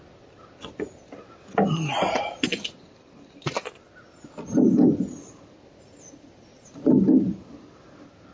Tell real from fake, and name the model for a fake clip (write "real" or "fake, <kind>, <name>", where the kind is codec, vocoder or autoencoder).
real